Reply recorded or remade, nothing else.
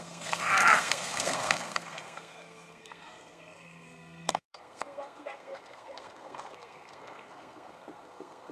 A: remade